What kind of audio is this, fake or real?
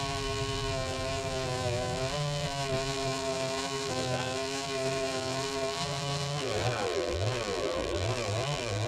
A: fake